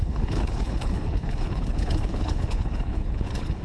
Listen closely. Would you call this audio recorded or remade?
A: remade